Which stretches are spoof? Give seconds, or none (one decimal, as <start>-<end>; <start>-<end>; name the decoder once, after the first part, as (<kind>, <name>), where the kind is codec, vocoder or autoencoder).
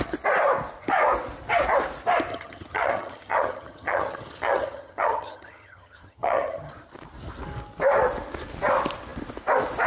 2.3-6.7 (vocoder, HiFi-GAN)